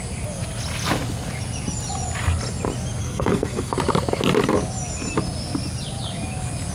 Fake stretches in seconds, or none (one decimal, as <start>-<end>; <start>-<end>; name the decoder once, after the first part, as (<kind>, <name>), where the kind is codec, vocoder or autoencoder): 3.0-3.7 (codec, SNAC)